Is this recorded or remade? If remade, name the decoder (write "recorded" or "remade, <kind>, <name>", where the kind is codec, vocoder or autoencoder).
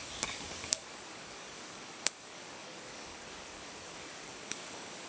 remade, codec, DAC